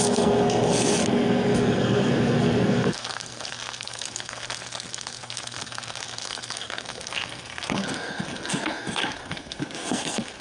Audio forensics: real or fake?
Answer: fake